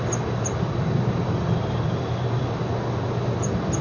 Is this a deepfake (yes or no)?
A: no